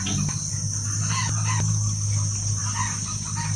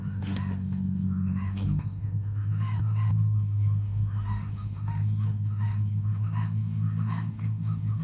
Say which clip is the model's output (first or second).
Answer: second